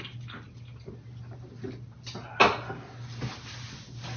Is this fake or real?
real